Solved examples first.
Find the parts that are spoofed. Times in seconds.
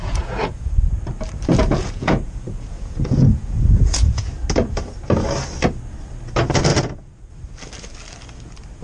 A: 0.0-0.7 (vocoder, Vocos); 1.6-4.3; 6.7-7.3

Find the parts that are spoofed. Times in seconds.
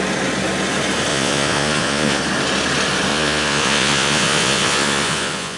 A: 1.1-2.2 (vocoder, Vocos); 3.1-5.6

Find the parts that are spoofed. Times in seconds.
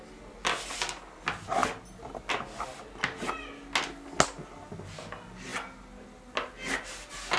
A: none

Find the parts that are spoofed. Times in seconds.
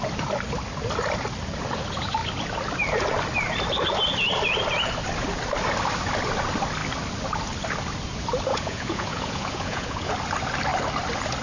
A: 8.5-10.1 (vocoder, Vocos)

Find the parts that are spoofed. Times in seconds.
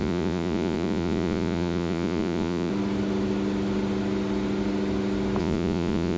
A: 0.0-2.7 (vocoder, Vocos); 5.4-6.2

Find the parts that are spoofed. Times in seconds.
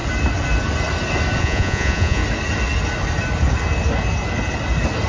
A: 1.4-2.2 (vocoder, Vocos)